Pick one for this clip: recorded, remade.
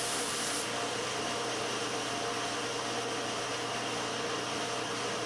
recorded